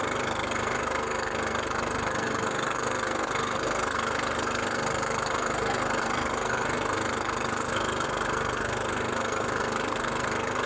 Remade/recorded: remade